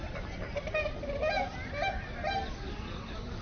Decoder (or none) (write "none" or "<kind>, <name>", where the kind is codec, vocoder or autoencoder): none